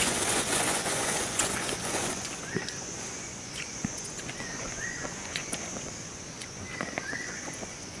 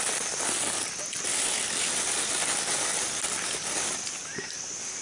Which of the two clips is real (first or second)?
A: second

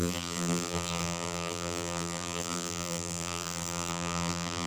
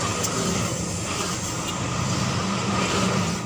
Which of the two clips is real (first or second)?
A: second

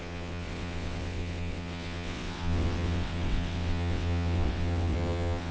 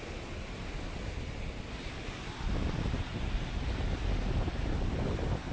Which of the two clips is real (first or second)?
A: second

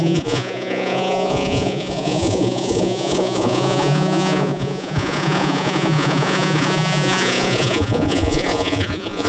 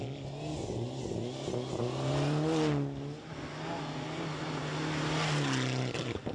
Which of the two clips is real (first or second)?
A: second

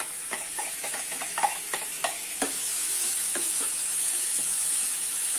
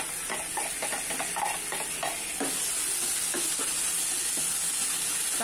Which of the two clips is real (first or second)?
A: second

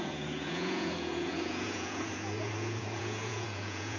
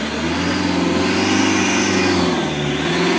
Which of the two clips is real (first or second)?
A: second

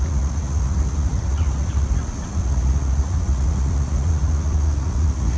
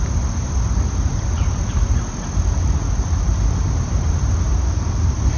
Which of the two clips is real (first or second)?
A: second